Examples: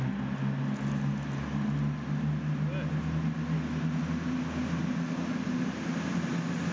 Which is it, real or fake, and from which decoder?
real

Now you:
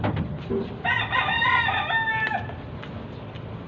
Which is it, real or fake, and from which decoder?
real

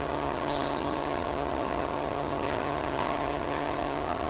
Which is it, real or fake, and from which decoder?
fake, vocoder, HiFi-GAN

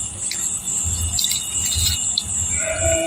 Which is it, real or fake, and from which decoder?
fake, vocoder, BigVGAN v2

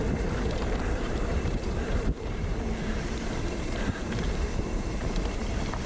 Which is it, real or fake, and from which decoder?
fake, vocoder, BigVGAN v2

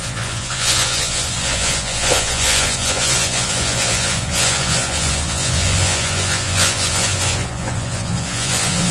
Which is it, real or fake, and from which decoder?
fake, vocoder, Vocos